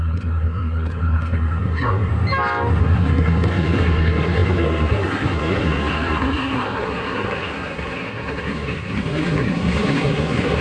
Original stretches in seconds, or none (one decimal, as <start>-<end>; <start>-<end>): 2.1-2.8